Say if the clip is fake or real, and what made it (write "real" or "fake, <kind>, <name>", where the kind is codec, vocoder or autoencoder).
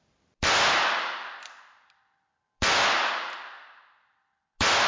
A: real